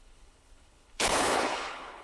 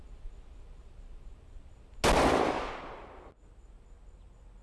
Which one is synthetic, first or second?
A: first